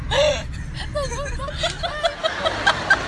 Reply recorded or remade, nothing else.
recorded